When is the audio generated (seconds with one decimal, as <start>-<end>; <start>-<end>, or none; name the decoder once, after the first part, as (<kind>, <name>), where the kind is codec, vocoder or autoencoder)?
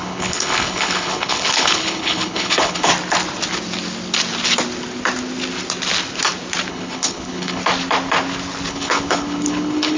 0.0-2.9 (codec, HILCodec); 6.7-7.6; 8.7-10.0